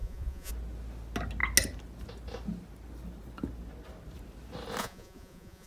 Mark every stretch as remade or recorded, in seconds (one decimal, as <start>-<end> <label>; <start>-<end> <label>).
0.0-0.5 remade; 0.5-4.8 recorded; 4.8-5.7 remade